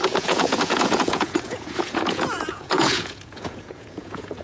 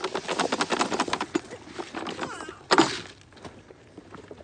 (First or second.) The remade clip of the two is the first